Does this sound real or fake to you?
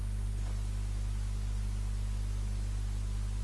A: real